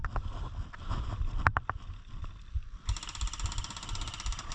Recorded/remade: recorded